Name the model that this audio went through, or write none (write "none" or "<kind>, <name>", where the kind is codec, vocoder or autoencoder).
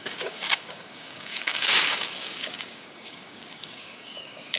codec, DAC